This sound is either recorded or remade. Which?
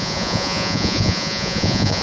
remade